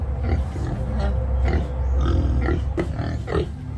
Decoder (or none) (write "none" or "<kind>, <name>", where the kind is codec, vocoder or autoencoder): none